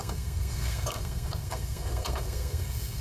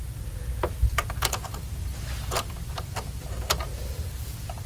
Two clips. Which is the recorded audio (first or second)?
second